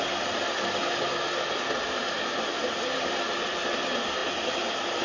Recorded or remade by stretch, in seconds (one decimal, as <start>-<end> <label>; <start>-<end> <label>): 0.0-5.0 recorded